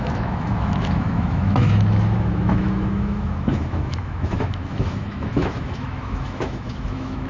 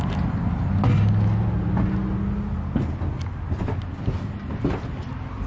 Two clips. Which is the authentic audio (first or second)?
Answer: second